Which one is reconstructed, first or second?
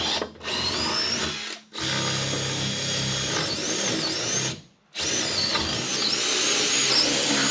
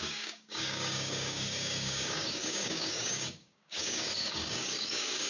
second